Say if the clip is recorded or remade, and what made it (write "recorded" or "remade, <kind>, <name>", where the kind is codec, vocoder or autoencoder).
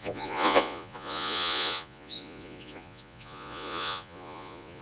remade, vocoder, Vocos